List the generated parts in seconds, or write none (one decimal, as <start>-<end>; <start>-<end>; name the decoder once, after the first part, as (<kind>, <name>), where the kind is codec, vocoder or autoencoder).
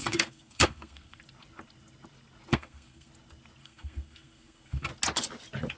0.0-1.2 (codec, SNAC); 2.5-3.1; 3.6-4.9